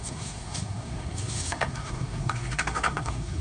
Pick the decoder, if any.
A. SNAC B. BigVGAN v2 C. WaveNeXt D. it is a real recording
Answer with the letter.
A